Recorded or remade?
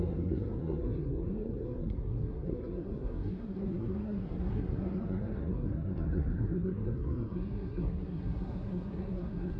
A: remade